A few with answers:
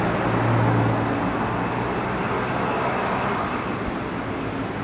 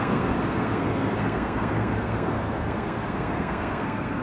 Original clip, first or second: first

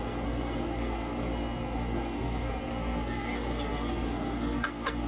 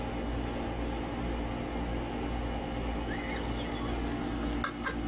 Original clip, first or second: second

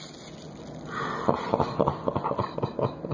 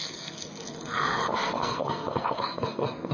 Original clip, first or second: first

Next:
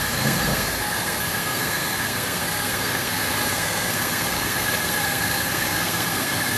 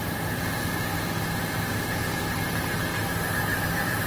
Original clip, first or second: second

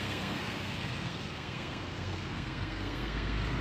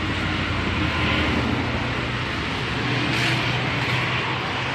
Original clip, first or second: second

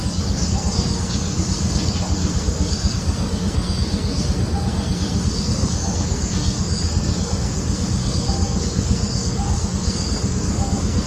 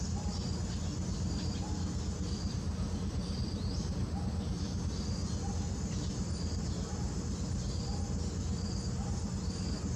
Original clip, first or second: second